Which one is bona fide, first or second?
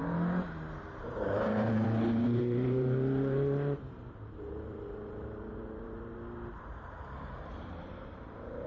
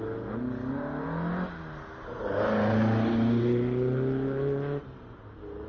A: second